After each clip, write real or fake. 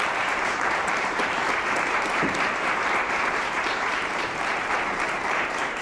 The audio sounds fake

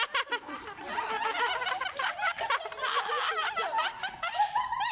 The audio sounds real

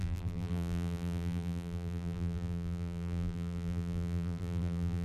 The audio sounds fake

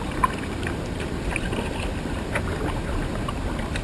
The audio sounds fake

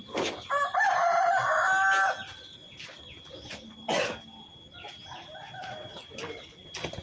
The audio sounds real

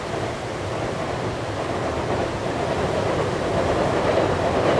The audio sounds fake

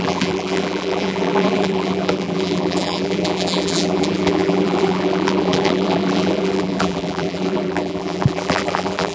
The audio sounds fake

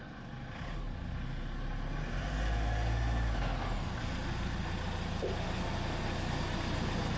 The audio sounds real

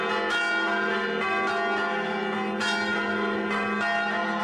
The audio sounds real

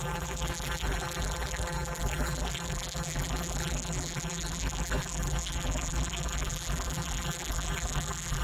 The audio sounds fake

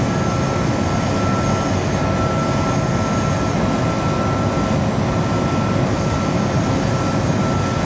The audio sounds real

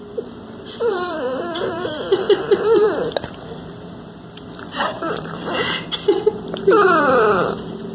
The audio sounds fake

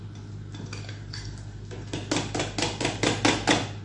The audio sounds real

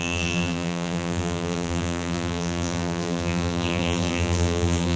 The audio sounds fake